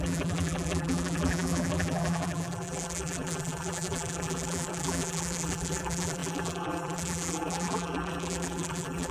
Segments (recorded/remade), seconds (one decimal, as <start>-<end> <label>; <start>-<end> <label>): 0.0-9.1 remade